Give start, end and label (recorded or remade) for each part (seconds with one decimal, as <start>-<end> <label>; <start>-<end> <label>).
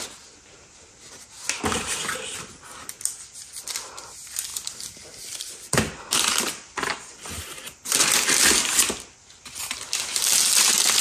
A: 0.0-4.5 recorded; 4.5-7.4 remade; 7.4-11.0 recorded